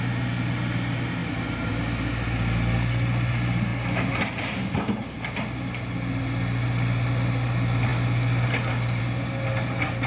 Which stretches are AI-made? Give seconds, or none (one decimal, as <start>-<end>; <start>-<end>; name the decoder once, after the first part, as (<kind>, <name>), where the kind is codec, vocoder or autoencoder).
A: none